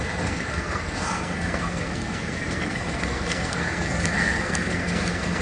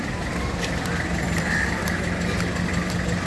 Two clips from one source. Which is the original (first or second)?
second